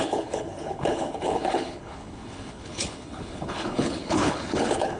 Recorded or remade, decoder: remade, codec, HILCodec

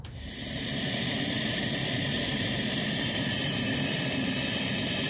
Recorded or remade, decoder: remade, vocoder, BigVGAN v2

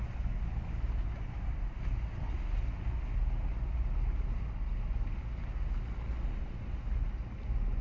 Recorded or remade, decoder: recorded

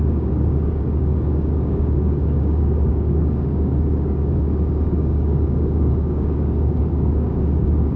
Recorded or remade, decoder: remade, codec, DAC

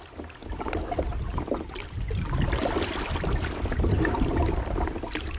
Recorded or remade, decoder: recorded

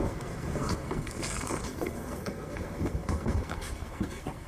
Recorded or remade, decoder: remade, codec, SNAC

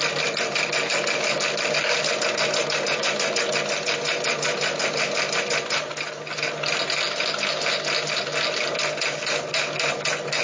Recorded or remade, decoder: recorded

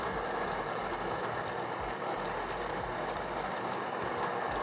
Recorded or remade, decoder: recorded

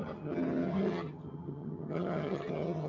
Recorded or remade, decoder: remade, vocoder, HiFi-GAN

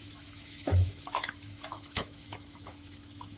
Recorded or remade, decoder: remade, autoencoder, DAC-VAE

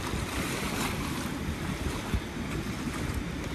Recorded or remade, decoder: recorded